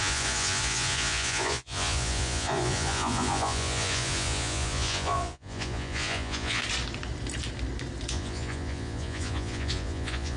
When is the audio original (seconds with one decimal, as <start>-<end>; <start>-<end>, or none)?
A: 6.6-8.1